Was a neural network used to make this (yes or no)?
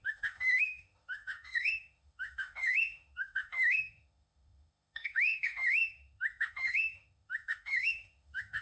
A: yes